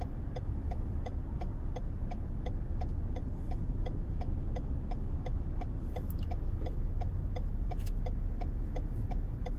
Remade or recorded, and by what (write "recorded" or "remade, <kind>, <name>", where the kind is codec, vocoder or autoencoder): remade, autoencoder, DAC-VAE